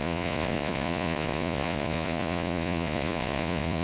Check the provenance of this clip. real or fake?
fake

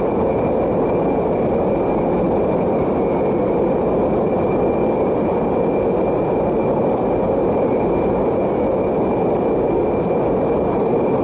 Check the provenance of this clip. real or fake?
real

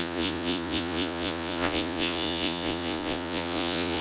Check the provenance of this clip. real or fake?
fake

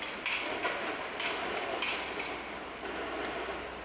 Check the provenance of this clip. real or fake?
real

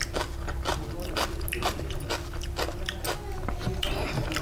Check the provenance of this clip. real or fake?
real